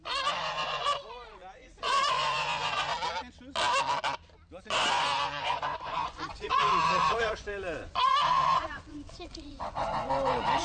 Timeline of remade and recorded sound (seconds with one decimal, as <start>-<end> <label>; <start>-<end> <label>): 0.0-2.9 remade; 2.9-4.6 recorded; 4.6-10.6 remade